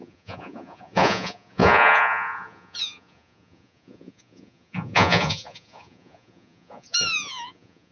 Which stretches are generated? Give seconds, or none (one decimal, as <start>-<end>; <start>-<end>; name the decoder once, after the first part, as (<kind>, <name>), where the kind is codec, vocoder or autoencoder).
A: 0.0-7.9 (vocoder, Vocos)